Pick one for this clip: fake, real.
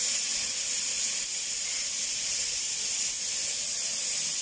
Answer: real